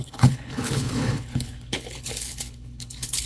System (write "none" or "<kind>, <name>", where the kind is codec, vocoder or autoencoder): codec, HILCodec